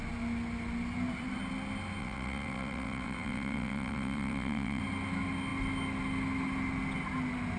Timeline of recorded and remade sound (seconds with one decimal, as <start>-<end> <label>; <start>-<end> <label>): 0.0-2.0 recorded; 2.0-4.8 remade; 4.8-7.6 recorded